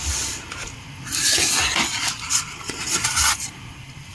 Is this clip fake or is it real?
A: real